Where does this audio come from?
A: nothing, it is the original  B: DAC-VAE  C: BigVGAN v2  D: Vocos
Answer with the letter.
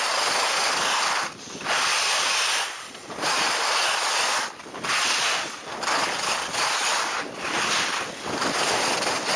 A